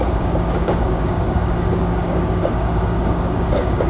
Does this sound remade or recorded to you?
remade